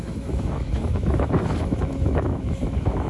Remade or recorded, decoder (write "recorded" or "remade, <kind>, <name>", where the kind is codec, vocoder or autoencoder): remade, autoencoder, DAC-VAE